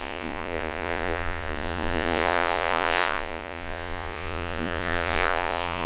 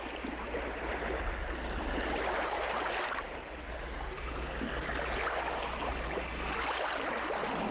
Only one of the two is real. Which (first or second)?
second